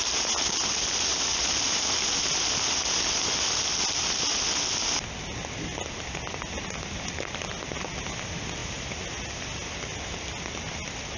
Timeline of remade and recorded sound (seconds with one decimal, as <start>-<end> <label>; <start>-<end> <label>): 0.0-1.1 recorded; 1.1-2.9 remade; 2.9-8.6 recorded; 8.6-9.8 remade; 9.8-11.2 recorded